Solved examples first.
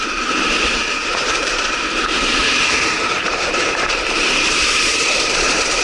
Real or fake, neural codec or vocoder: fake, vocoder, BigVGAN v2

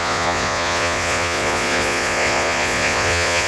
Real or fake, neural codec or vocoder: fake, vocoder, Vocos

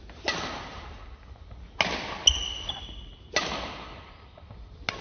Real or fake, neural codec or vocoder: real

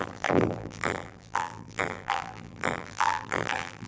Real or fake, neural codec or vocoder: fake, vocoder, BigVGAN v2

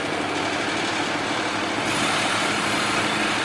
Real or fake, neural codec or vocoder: real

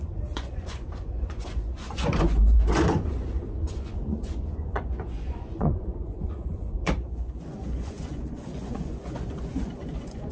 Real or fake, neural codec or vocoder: fake, vocoder, Vocos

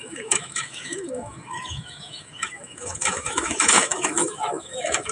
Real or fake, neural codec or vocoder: fake, autoencoder, DAC-VAE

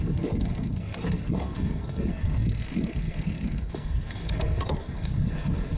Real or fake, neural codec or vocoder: fake, codec, SNAC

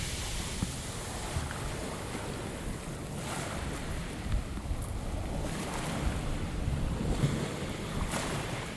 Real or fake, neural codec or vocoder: real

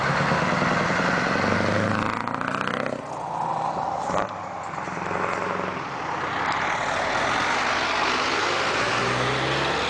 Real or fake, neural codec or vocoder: real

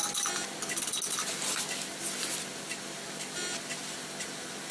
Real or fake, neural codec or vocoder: real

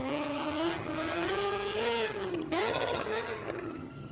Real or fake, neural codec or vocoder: fake, vocoder, HiFi-GAN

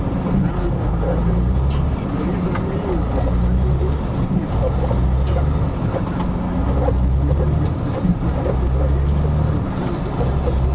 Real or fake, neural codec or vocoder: real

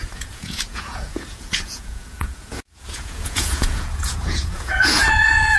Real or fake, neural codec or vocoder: fake, vocoder, Vocos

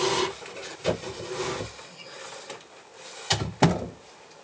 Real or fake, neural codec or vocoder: real